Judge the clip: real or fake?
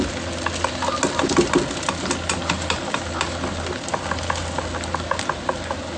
real